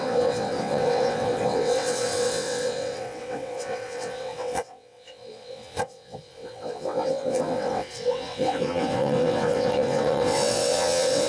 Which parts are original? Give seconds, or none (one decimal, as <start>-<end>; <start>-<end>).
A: none